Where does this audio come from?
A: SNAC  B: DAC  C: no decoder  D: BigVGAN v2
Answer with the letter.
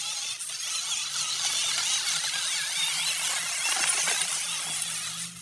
C